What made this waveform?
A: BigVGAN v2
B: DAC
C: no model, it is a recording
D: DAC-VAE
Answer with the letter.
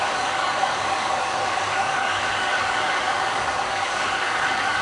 B